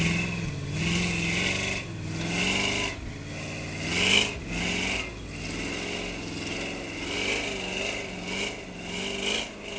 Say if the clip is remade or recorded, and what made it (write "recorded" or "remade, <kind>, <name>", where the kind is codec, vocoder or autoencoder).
recorded